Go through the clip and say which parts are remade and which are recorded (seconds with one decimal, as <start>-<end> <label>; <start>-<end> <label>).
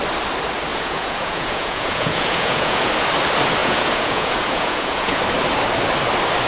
0.0-0.7 recorded; 0.7-2.9 remade; 2.9-3.6 recorded; 3.6-5.2 remade; 5.2-6.5 recorded